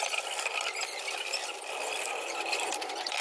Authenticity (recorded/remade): remade